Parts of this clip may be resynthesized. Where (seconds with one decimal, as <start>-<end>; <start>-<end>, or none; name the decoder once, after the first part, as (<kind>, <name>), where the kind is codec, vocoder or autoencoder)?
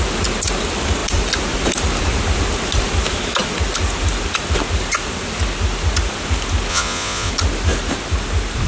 6.7-7.3 (vocoder, Vocos)